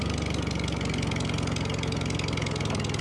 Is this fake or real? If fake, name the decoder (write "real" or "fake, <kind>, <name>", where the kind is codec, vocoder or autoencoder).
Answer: real